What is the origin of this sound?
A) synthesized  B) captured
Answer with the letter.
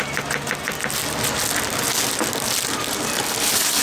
B